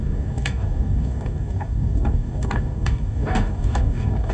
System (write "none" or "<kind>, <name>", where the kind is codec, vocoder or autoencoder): codec, DAC